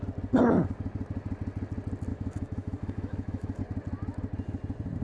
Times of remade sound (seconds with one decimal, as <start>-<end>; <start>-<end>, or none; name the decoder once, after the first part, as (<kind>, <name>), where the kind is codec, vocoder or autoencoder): 2.1-3.6 (autoencoder, DAC-VAE)